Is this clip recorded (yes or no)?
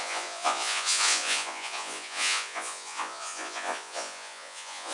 no